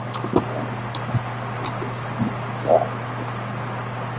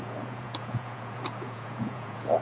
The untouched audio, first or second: first